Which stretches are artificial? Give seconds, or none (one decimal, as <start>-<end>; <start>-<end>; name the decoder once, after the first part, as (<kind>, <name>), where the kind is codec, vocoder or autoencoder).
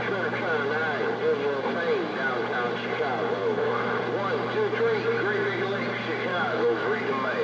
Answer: 3.4-4.0 (autoencoder, DAC-VAE); 6.3-7.0